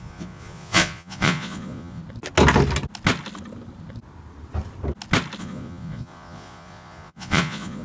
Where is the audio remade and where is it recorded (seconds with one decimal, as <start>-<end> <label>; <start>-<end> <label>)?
0.0-2.0 remade; 2.0-5.4 recorded; 5.4-7.8 remade